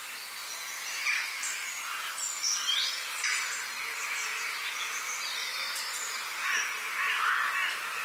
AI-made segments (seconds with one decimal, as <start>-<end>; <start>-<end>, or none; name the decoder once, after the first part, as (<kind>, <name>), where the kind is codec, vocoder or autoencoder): 4.3-5.0 (vocoder, Vocos)